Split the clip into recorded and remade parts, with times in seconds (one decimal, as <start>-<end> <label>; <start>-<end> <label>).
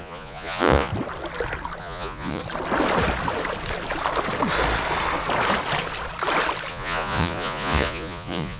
0.0-0.9 remade; 0.9-1.8 recorded; 1.8-2.4 remade; 2.4-6.7 recorded; 6.7-8.6 remade